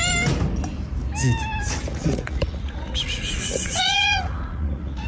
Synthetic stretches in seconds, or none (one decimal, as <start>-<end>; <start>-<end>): 1.9-5.1